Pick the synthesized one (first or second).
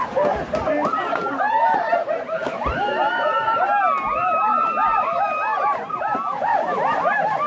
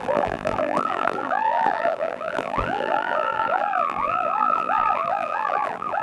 second